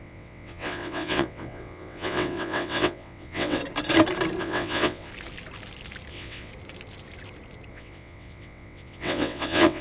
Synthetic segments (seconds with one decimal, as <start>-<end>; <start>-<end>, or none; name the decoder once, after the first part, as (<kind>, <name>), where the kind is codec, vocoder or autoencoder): 0.0-3.6 (vocoder, WaveNeXt); 4.4-5.1; 6.1-6.5; 7.7-9.8